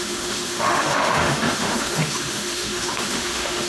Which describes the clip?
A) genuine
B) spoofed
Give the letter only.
B